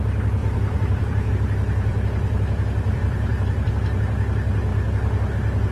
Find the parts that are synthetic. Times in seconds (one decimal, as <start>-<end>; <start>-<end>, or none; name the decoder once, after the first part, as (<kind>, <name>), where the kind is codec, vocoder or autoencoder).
0.4-1.3 (vocoder, BigVGAN v2); 1.9-3.7